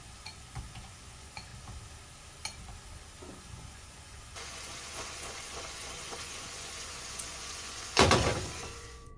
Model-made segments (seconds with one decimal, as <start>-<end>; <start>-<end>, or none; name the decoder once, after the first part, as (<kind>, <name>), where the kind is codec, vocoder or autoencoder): 0.0-1.5 (vocoder, Vocos); 3.4-9.2